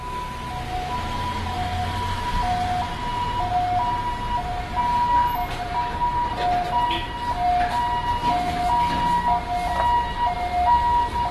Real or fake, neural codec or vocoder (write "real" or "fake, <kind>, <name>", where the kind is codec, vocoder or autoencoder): real